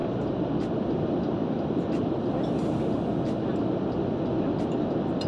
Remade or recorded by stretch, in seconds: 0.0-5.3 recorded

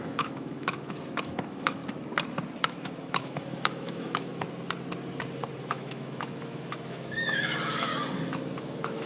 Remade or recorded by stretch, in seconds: 0.0-1.8 remade; 1.8-2.6 recorded; 2.6-4.3 remade; 4.3-5.5 recorded; 5.5-7.9 remade; 7.9-8.6 recorded; 8.6-9.1 remade